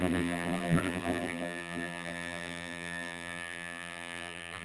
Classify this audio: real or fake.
fake